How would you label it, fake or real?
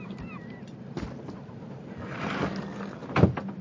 real